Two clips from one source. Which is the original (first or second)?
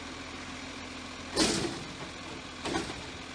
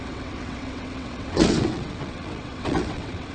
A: first